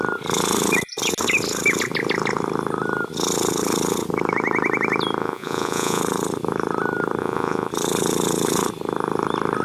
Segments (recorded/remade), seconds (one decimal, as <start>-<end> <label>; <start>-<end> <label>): 0.0-5.2 recorded; 5.2-6.0 remade; 6.0-7.2 recorded; 7.2-7.7 remade; 7.7-9.6 recorded